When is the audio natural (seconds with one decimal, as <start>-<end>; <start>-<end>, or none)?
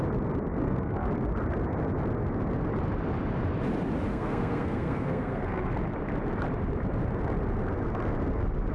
0.0-0.6; 1.1-4.1; 5.7-8.7